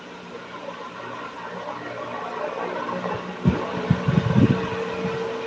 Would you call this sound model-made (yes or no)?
no